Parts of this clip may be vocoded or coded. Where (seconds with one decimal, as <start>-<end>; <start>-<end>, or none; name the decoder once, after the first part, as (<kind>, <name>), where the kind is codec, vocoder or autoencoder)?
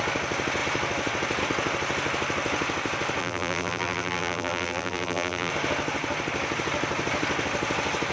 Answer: 3.2-5.5 (vocoder, BigVGAN v2)